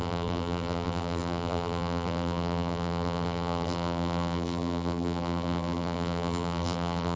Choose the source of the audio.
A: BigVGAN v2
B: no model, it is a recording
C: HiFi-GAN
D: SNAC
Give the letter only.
A